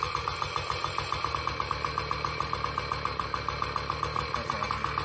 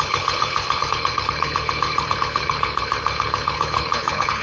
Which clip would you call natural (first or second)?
first